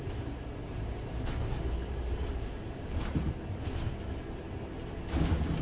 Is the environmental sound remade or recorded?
recorded